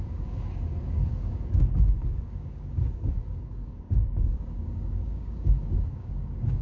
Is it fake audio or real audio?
fake